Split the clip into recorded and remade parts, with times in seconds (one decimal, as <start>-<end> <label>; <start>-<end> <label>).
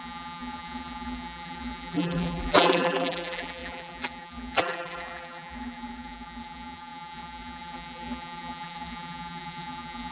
0.0-10.1 remade